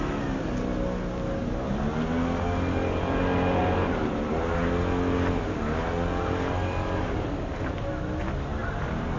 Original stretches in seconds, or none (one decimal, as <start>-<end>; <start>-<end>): 0.0-3.6; 4.6-8.6